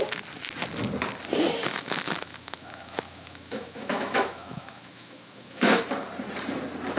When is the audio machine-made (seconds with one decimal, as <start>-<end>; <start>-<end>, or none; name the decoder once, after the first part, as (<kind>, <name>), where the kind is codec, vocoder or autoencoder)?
1.6-5.8 (autoencoder, DAC-VAE)